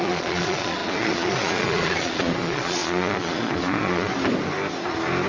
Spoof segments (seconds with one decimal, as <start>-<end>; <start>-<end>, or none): 0.0-4.1